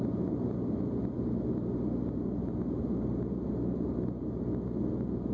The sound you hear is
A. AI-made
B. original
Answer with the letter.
B